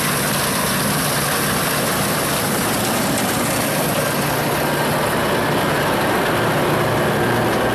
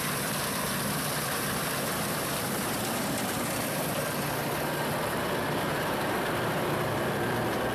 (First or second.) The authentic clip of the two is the first